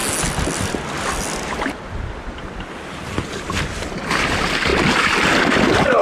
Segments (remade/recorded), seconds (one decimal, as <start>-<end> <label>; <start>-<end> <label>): 0.0-6.0 recorded